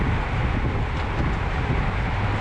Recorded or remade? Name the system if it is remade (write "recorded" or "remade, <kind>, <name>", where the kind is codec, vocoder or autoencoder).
recorded